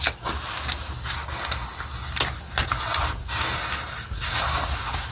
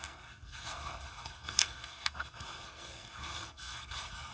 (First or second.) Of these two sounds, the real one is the first